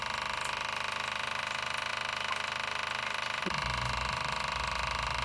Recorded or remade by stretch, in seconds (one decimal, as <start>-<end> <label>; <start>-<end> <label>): 0.0-5.2 recorded